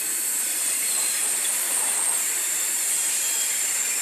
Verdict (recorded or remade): remade